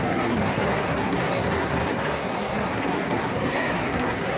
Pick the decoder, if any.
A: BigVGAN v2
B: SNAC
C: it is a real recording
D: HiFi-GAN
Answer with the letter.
B